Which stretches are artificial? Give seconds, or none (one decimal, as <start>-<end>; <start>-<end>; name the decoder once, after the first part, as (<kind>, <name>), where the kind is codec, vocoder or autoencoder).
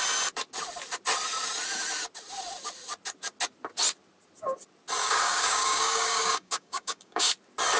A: 5.0-7.3 (codec, DAC)